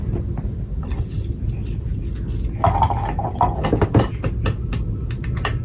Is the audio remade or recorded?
recorded